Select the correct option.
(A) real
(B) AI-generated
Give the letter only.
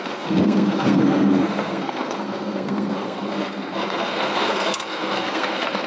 B